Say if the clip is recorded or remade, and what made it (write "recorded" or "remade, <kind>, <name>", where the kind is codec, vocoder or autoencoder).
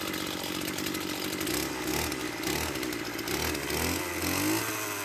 recorded